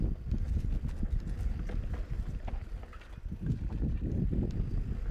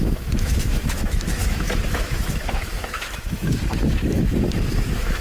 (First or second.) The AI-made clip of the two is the second